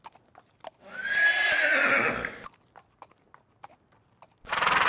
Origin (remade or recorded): recorded